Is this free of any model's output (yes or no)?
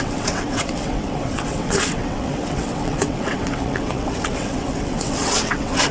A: no